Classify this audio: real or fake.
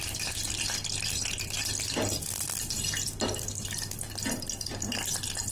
real